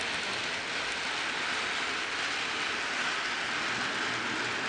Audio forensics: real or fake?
real